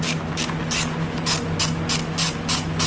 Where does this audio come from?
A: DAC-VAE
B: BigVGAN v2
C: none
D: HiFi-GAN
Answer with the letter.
C